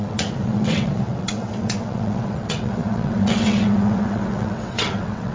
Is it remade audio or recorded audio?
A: remade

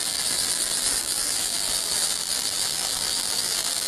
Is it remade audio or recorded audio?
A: remade